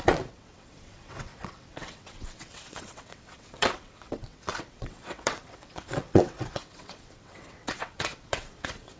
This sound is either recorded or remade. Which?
remade